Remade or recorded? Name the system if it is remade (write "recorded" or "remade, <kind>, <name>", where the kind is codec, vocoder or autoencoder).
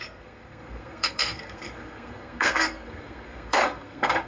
remade, codec, SNAC